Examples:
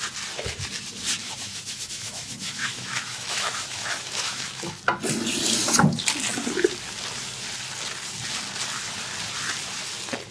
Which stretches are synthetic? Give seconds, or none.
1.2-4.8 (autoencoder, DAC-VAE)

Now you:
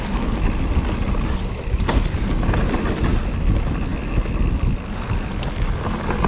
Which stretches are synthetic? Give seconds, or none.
none

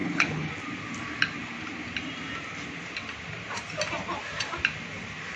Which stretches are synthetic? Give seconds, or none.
0.0-0.5 (codec, HILCodec)

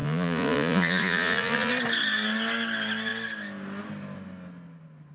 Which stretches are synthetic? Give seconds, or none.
0.0-1.7 (vocoder, Vocos)

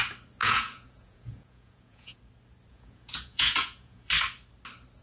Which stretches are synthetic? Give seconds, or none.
0.4-2.2 (vocoder, Vocos); 2.7-4.1

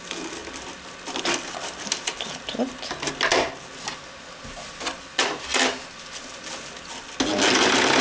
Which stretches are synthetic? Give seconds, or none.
none

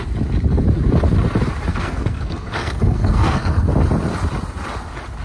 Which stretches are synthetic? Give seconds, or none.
1.7-3.7 (codec, SNAC)

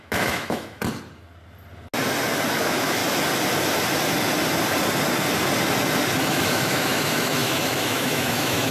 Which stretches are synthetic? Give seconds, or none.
0.0-0.8 (autoencoder, DAC-VAE); 2.6-3.0; 6.3-8.7